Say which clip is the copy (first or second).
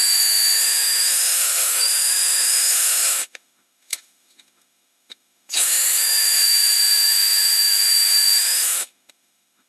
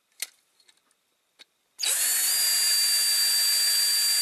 first